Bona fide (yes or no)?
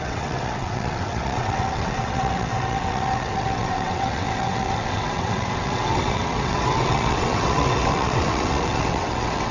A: no